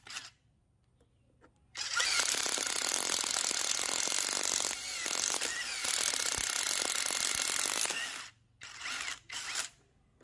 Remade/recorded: recorded